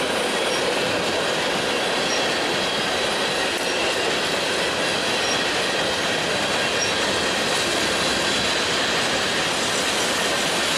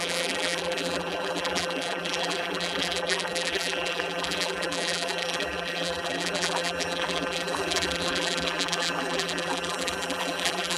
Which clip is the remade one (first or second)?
second